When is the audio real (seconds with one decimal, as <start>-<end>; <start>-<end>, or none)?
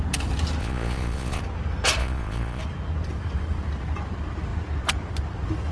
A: 0.0-0.6; 1.4-2.0; 2.6-5.7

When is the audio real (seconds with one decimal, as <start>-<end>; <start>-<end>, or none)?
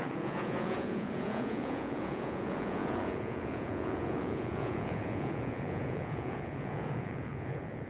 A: none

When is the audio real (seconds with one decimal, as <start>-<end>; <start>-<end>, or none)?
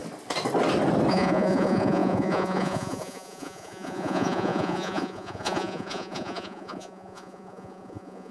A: 0.0-1.1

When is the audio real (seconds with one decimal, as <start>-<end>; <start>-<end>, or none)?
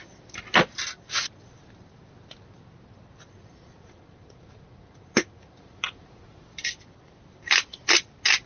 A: 0.0-3.4; 6.2-8.5